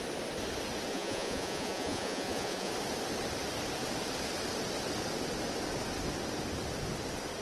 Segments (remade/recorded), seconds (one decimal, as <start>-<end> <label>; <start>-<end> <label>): 0.0-0.9 recorded; 0.9-2.7 remade; 2.7-7.4 recorded